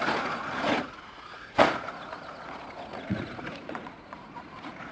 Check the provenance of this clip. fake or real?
fake